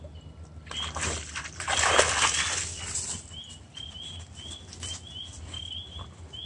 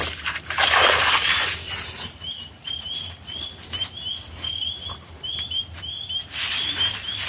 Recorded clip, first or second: first